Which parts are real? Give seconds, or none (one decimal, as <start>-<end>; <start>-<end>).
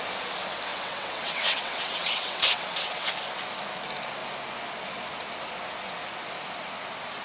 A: 0.0-0.7; 3.1-7.2